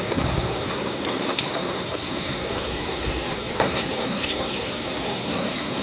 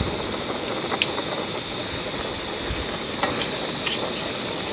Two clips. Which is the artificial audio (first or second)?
first